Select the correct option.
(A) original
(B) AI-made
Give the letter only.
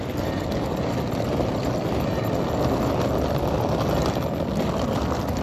A